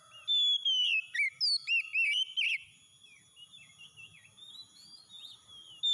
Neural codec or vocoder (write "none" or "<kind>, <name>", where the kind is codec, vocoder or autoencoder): none